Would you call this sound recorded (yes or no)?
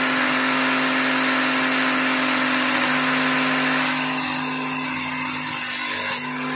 yes